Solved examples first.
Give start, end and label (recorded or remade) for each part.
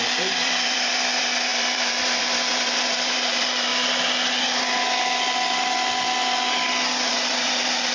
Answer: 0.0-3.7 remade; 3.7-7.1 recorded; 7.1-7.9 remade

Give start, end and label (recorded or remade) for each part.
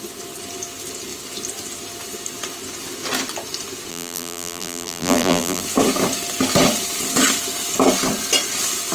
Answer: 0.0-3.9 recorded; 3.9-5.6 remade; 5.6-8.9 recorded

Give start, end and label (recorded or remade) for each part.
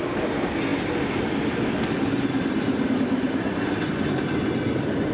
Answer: 0.0-5.1 recorded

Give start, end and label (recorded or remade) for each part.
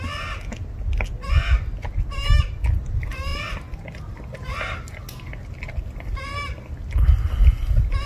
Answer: 0.0-8.1 recorded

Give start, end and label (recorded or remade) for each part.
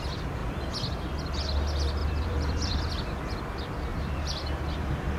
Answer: 0.0-2.0 recorded; 2.0-2.9 remade; 2.9-3.9 recorded; 3.9-4.8 remade; 4.8-5.2 recorded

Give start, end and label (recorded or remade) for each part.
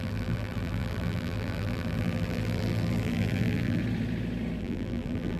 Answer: 0.0-3.8 remade; 3.8-4.6 recorded; 4.6-5.4 remade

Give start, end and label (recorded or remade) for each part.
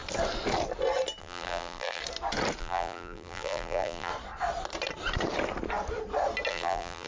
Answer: 0.0-1.2 recorded; 1.2-2.0 remade; 2.0-2.6 recorded; 2.6-4.1 remade; 4.1-6.5 recorded; 6.5-7.1 remade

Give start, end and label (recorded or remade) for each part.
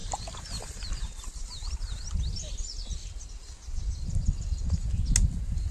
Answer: 0.0-2.1 remade; 2.1-5.7 recorded